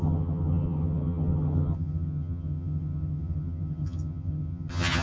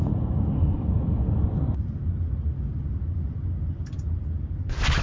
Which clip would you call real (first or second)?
second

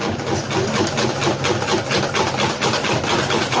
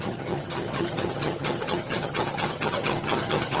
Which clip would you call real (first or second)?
first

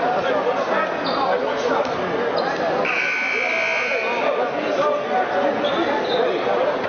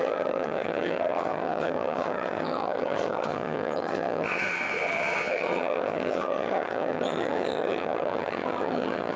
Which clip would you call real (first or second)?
first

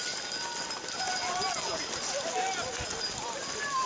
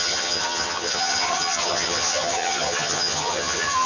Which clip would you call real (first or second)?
first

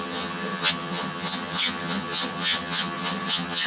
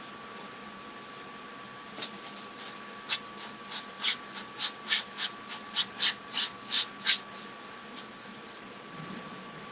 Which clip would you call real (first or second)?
second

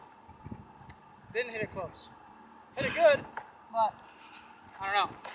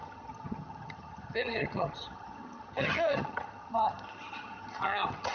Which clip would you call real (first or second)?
first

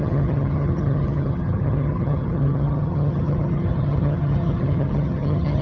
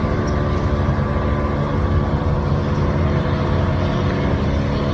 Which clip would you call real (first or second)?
second